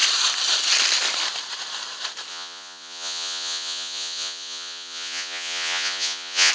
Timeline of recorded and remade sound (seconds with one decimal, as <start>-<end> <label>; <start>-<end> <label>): 0.0-2.3 recorded; 2.3-6.5 remade